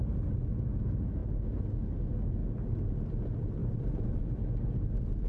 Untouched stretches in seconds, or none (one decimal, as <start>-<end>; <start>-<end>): 0.0-2.4; 3.1-3.6; 4.2-5.3